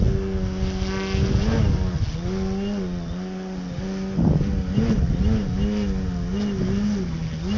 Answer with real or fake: real